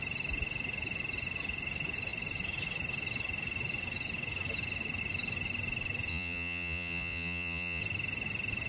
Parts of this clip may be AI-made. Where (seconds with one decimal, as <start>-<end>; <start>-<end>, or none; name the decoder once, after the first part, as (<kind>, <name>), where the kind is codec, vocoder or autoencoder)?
6.1-7.8 (vocoder, Vocos)